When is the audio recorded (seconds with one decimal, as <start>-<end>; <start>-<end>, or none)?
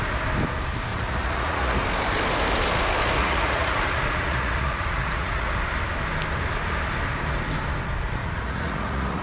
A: 0.0-0.9; 1.8-3.2; 5.5-8.2